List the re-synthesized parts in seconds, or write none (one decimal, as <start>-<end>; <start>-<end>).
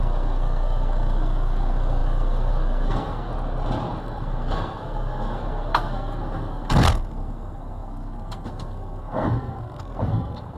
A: 0.0-3.3; 4.0-10.6